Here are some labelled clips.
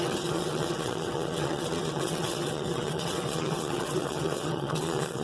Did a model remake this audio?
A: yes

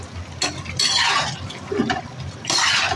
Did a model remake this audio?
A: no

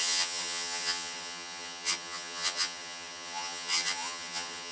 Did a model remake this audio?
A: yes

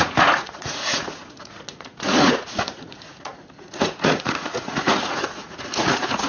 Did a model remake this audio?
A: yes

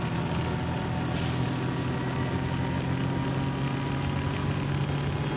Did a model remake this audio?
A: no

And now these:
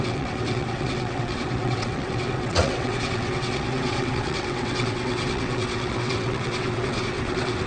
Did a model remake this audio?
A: yes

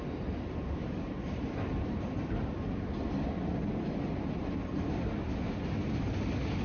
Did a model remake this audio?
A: no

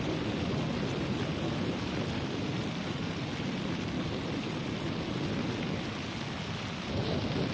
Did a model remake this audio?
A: yes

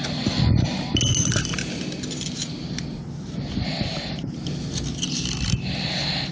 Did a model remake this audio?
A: no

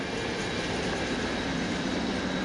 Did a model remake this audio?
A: no